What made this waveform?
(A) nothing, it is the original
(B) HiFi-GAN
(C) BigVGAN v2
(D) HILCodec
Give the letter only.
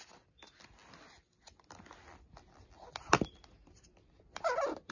A